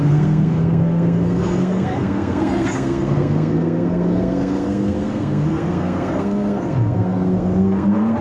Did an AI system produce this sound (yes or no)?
yes